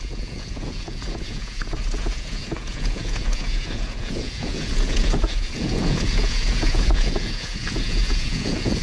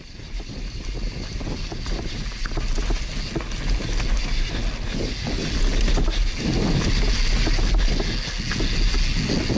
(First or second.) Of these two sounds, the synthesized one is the first